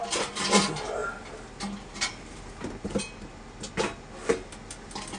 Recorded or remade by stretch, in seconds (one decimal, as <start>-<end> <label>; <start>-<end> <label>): 0.0-5.2 recorded